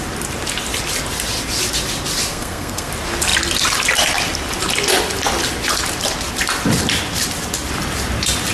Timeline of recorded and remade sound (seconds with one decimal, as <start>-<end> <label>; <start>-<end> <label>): 0.0-2.3 recorded; 2.3-2.9 remade; 2.9-8.5 recorded